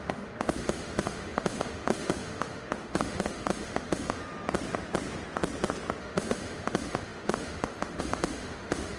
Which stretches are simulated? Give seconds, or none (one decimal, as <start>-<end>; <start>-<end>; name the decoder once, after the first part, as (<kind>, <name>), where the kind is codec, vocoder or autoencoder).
0.0-4.2 (autoencoder, DAC-VAE); 6.0-9.0